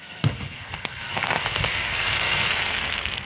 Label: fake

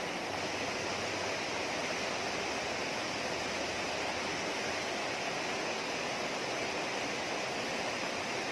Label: real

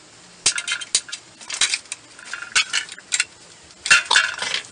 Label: real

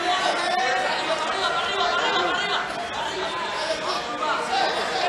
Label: real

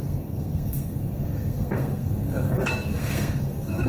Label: fake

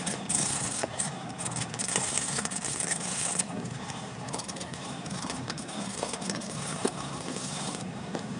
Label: fake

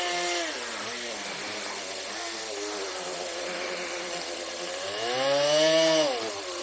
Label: real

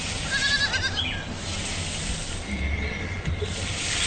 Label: real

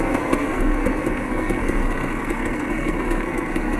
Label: fake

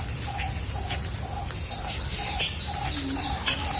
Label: real